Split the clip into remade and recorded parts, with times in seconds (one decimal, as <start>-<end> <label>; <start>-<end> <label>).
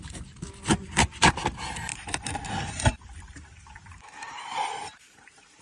0.0-5.6 remade